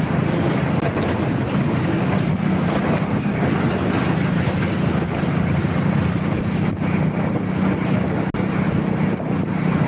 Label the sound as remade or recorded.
recorded